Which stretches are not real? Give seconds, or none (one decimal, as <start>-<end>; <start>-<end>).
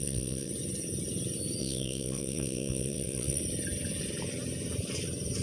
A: 0.0-0.5; 1.6-3.4